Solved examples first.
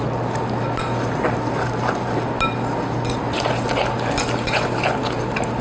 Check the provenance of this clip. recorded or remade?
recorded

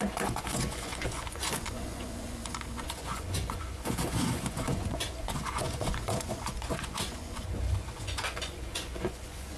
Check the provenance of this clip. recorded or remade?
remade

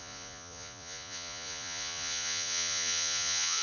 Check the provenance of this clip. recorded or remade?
remade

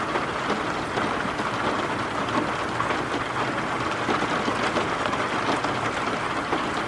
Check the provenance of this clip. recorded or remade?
recorded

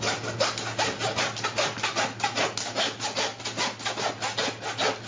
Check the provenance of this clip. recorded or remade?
recorded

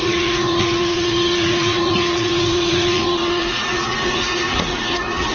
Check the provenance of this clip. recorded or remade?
remade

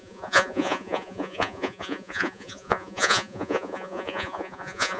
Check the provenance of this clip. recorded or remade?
remade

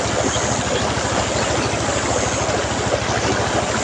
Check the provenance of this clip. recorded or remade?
recorded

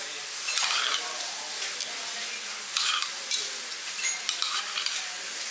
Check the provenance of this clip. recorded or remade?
recorded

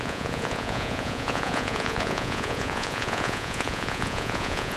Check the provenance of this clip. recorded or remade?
remade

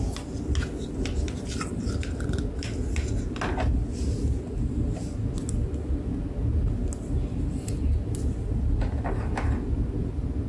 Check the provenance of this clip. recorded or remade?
recorded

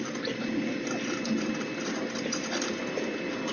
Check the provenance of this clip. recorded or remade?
recorded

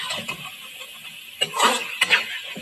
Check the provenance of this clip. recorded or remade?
recorded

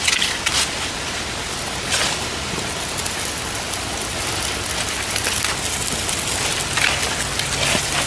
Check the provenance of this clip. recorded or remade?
recorded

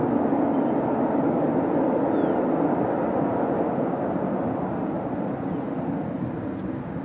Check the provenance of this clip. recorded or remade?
recorded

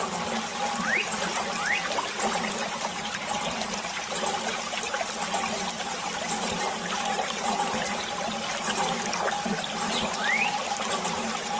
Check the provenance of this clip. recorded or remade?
recorded